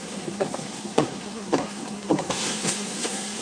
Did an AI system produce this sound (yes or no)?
yes